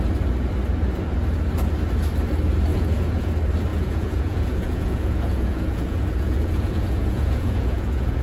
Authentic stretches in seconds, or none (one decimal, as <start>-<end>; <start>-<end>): 0.0-2.7; 3.3-3.7